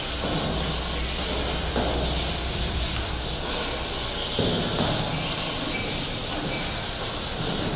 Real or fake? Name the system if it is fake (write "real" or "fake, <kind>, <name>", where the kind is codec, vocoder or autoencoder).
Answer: real